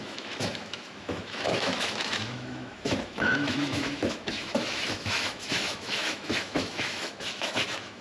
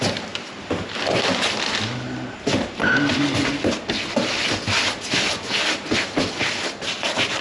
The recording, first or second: second